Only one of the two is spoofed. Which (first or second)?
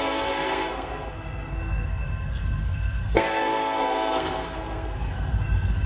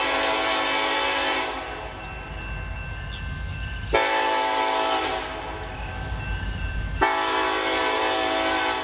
first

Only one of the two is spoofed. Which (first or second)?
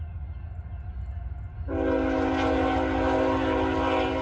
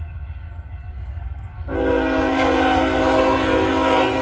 second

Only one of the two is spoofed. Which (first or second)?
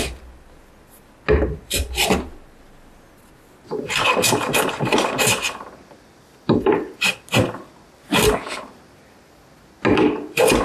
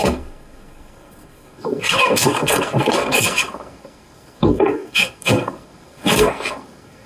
second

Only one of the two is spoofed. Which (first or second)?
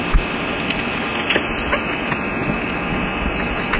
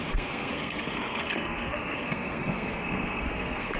second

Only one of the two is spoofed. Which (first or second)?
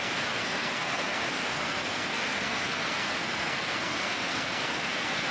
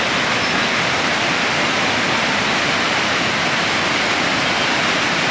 first